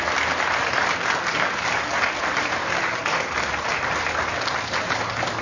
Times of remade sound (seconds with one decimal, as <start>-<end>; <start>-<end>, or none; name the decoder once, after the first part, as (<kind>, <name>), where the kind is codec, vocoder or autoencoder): 1.3-1.9 (codec, DAC); 2.6-3.3